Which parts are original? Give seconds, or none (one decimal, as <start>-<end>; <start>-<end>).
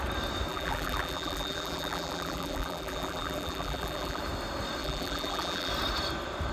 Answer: 0.0-0.5; 4.2-4.8; 5.7-6.5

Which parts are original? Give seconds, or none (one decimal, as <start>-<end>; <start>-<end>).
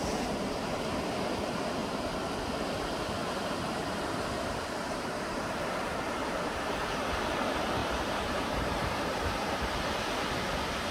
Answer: 0.0-1.8; 2.3-3.4; 6.7-7.8; 9.6-10.9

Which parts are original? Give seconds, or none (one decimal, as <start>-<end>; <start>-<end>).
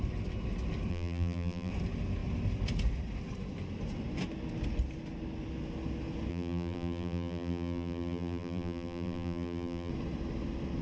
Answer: 0.0-0.9; 1.7-6.3; 9.9-10.8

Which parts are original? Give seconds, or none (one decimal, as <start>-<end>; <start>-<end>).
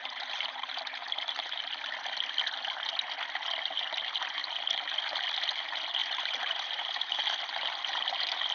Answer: 1.6-6.0; 7.2-8.5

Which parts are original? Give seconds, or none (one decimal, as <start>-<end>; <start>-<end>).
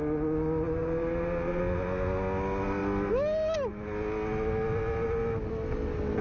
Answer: 0.0-0.8; 1.6-6.2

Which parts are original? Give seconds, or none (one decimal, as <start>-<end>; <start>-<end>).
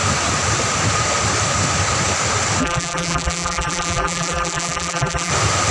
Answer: 0.0-2.6; 5.3-5.7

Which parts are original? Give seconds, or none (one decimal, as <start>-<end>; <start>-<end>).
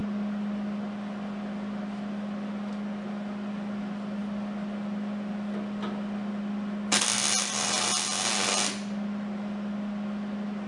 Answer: 0.0-10.7